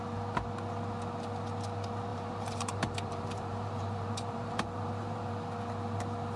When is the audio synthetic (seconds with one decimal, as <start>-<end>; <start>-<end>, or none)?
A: 2.1-5.3